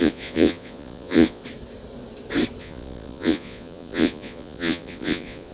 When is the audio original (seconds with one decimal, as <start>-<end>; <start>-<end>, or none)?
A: 1.4-2.6